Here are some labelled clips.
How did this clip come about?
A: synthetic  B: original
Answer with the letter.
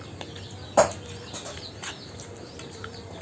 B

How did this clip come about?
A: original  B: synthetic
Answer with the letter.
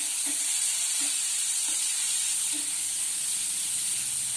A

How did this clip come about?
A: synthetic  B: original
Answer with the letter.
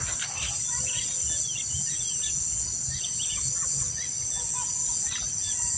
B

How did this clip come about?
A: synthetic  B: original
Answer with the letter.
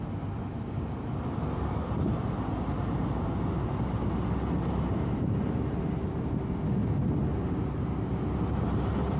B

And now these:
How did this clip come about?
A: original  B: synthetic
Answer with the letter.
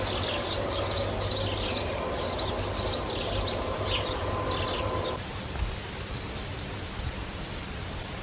A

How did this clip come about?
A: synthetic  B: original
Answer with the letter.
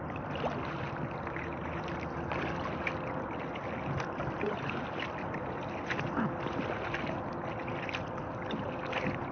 B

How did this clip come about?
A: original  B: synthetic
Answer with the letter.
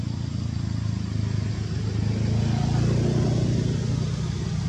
A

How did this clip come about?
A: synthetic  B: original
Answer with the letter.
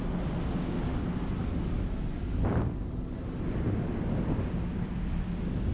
B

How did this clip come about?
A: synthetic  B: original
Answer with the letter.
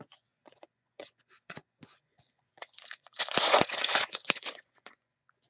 A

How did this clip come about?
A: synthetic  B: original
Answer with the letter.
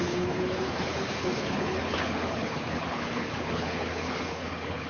A